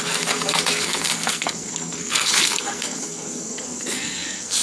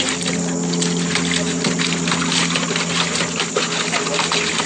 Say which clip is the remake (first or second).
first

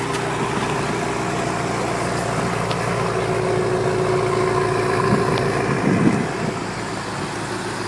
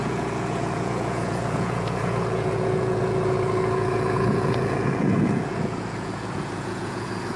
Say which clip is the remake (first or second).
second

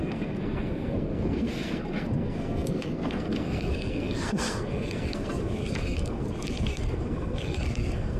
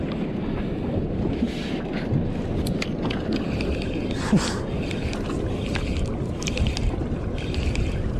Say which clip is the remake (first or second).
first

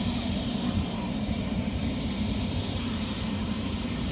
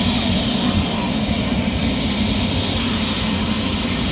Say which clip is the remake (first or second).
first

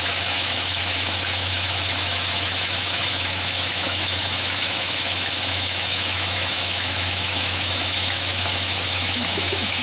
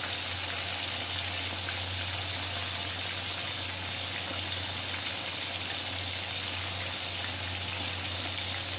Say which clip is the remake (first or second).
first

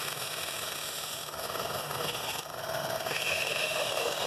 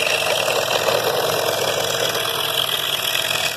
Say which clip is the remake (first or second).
first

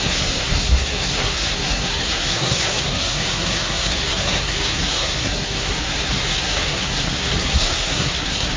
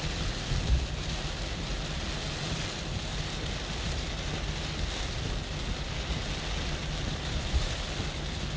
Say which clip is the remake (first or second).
first